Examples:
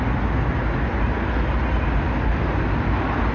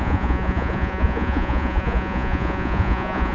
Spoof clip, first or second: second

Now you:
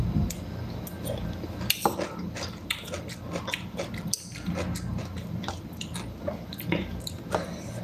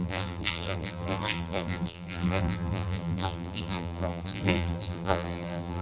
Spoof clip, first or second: second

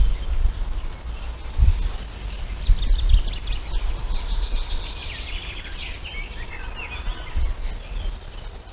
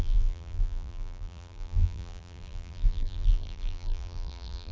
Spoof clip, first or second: second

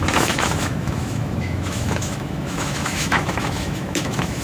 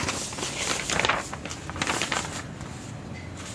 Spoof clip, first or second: first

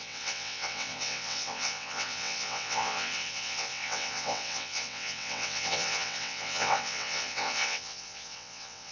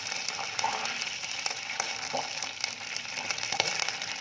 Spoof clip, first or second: first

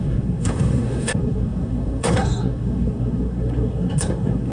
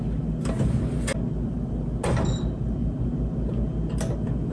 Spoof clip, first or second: first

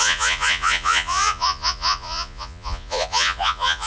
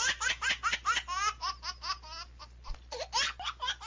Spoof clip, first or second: first